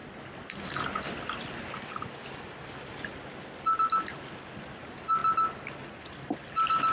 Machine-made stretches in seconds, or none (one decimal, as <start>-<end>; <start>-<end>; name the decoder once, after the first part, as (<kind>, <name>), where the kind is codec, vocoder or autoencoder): none